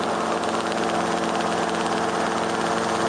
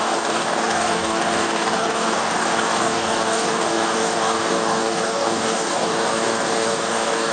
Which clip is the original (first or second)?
first